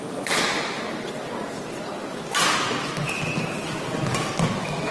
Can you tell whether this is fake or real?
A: real